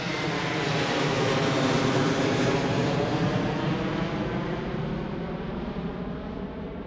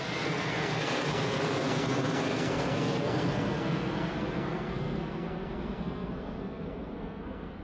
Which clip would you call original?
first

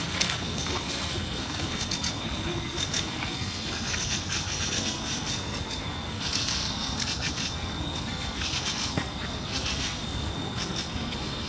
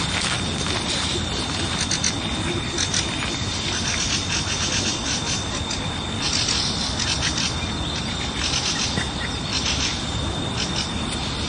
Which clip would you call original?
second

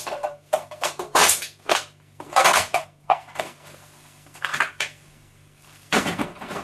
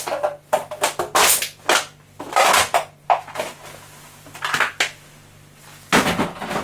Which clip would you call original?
second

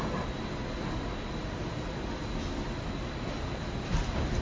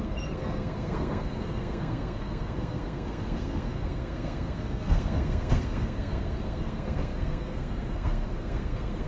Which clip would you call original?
first